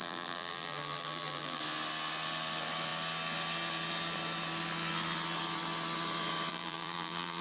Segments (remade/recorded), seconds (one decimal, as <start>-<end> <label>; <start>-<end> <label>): 0.0-1.6 remade; 1.6-6.5 recorded; 6.5-7.4 remade